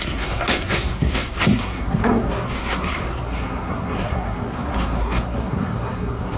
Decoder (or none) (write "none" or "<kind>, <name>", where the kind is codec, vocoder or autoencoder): codec, SNAC